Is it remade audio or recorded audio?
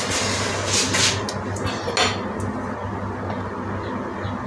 recorded